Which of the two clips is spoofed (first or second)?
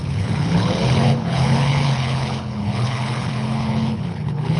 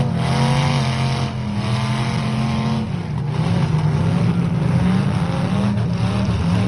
first